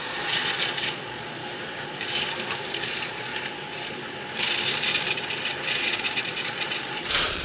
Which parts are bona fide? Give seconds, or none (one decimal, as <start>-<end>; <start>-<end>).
1.4-2.7; 3.3-5.7